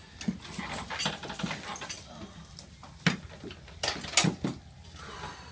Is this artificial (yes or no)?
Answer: no